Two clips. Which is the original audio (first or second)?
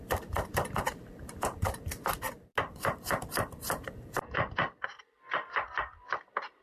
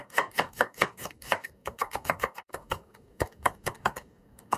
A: first